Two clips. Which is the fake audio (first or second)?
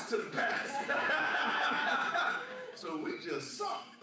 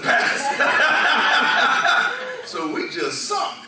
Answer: first